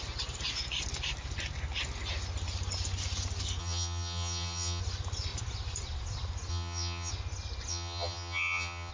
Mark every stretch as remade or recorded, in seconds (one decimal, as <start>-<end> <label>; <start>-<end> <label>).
0.0-3.6 recorded; 3.6-4.8 remade; 4.8-6.5 recorded; 6.5-7.1 remade; 7.1-7.7 recorded; 7.7-8.9 remade